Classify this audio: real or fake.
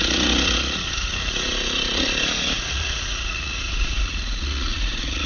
fake